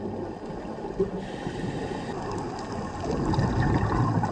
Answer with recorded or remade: recorded